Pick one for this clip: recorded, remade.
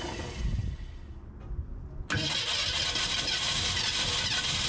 recorded